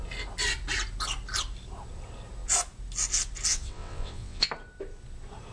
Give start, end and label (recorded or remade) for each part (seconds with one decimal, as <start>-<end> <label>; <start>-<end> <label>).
0.0-3.5 recorded; 3.5-4.5 remade; 4.5-5.5 recorded

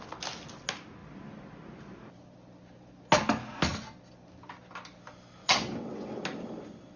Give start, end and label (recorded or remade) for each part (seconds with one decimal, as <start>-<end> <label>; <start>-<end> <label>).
0.0-5.4 recorded; 5.4-6.2 remade; 6.2-7.0 recorded

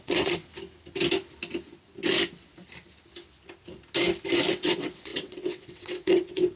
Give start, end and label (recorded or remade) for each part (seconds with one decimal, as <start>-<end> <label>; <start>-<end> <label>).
0.0-0.5 remade; 0.5-4.5 recorded; 4.5-6.6 remade

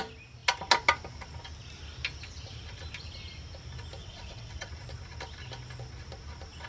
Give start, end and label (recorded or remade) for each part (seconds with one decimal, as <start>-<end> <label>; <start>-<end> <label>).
0.0-4.0 recorded; 4.0-4.7 remade; 4.7-6.7 recorded

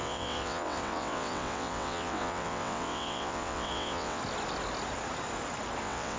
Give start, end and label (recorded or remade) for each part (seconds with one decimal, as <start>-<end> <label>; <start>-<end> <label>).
0.0-4.2 remade; 4.2-5.8 recorded; 5.8-6.2 remade

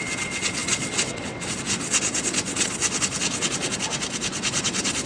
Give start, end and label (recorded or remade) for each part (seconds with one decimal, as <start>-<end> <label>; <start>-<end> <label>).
0.0-5.1 remade